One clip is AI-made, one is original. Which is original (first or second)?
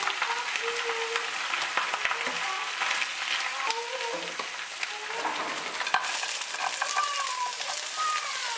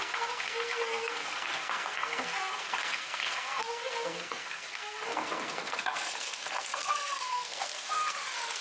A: first